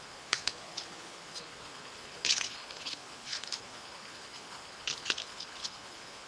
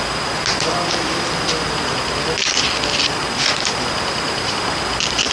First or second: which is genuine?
second